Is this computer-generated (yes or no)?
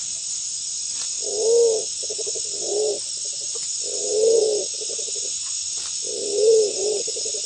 no